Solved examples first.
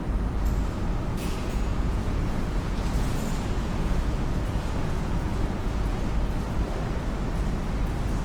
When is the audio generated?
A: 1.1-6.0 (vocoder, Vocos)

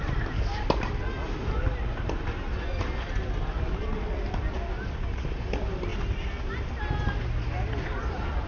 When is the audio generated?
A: none

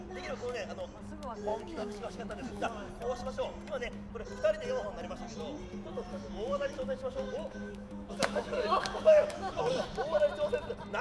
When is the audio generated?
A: 1.5-2.9 (autoencoder, DAC-VAE); 6.1-9.6